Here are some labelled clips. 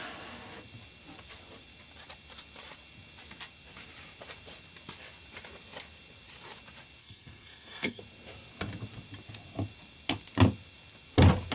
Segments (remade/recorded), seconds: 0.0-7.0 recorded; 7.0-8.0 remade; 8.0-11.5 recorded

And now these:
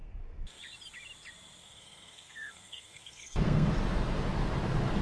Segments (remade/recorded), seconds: 0.0-0.6 remade; 0.6-1.6 recorded; 1.6-3.7 remade; 3.7-5.0 recorded

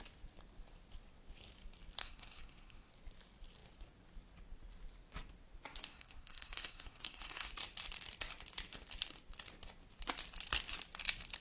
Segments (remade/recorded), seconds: 0.0-2.0 recorded; 2.0-2.9 remade; 2.9-5.9 recorded; 5.9-7.5 remade; 7.5-11.4 recorded

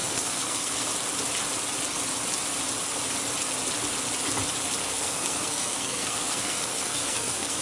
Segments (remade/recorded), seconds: 0.0-0.9 remade; 0.9-4.8 recorded; 4.8-7.6 remade